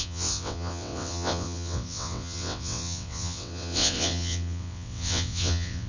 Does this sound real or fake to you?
fake